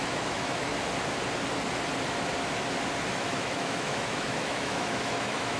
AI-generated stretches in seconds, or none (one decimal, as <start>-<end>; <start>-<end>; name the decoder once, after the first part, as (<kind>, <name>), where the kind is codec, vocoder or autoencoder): 0.0-0.7 (autoencoder, DAC-VAE); 3.1-5.6